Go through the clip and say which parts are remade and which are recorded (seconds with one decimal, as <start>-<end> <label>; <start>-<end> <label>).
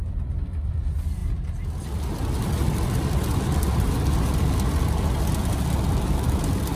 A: 0.0-6.8 recorded